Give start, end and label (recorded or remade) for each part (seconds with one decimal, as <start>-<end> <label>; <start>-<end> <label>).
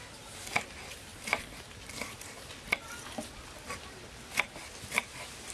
0.0-5.5 recorded